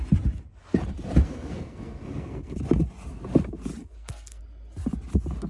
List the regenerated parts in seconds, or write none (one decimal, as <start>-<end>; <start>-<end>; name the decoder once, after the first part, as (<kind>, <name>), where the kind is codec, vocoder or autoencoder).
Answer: 1.2-2.6 (codec, SNAC); 3.8-4.4